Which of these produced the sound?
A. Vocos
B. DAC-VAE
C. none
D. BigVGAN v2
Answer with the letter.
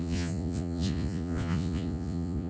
A